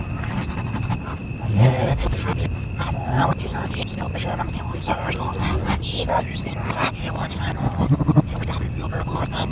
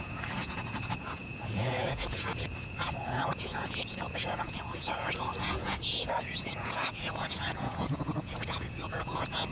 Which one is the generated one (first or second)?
second